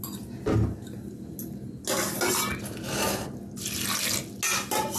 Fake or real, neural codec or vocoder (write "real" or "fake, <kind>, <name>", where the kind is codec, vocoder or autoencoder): real